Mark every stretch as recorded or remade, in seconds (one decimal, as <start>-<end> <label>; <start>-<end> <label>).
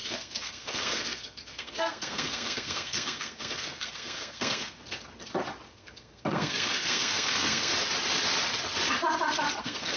0.0-4.8 remade; 4.8-5.7 recorded; 5.7-7.7 remade; 7.7-9.6 recorded; 9.6-10.0 remade